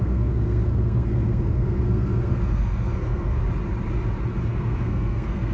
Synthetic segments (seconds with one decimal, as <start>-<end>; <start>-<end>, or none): 0.0-3.4; 4.5-5.5